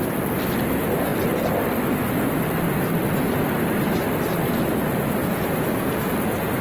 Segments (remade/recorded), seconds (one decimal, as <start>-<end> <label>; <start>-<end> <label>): 0.0-5.2 recorded; 5.2-6.0 remade; 6.0-6.6 recorded